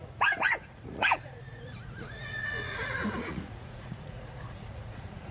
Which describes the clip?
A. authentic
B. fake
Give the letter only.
B